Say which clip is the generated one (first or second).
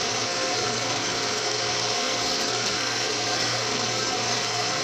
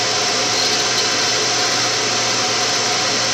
first